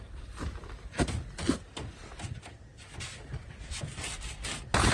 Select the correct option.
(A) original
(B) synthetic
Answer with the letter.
A